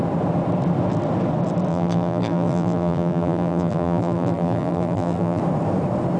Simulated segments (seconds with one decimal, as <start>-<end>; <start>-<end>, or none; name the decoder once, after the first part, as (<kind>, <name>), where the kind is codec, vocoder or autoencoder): 1.7-5.4 (vocoder, BigVGAN v2)